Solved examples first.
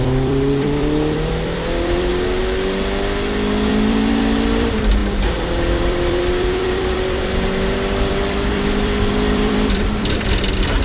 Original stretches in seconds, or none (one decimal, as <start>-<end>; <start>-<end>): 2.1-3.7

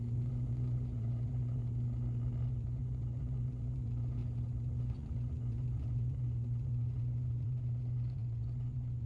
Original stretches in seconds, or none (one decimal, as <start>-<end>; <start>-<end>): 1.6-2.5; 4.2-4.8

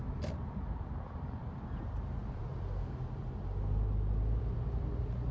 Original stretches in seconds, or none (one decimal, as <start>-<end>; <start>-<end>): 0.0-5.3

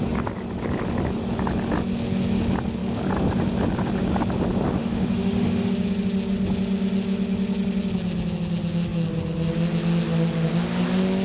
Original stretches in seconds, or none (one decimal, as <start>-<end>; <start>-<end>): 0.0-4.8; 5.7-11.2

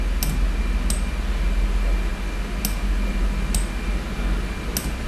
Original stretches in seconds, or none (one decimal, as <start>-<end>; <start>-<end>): 0.0-5.1

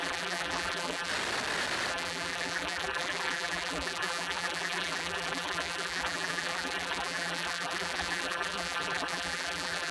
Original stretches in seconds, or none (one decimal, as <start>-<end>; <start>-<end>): 1.1-1.9

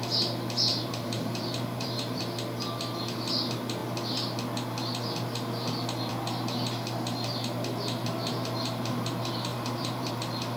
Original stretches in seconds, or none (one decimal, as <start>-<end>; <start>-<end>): 0.0-0.7; 2.2-9.5; 10.1-10.6

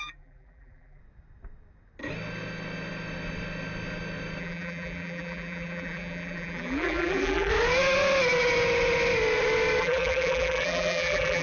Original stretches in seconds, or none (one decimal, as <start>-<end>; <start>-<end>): 1.0-4.4; 7.5-9.8